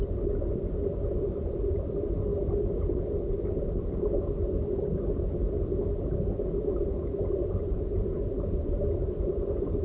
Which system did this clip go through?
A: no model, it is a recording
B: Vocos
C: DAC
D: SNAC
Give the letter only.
A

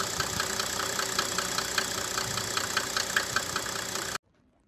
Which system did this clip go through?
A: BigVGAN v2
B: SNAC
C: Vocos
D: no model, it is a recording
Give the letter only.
D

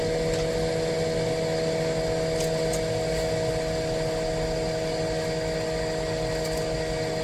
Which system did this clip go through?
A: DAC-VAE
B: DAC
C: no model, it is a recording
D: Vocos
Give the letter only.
C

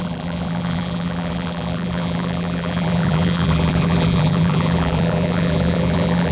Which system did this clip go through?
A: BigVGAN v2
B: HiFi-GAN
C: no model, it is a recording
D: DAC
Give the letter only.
A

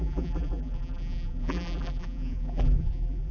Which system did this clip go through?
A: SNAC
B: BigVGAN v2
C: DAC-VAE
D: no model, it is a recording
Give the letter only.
B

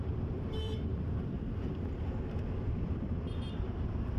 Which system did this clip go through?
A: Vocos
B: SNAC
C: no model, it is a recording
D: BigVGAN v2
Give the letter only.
D